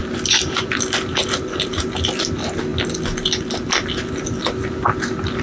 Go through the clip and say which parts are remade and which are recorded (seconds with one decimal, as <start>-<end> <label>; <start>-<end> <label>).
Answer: 0.0-5.4 recorded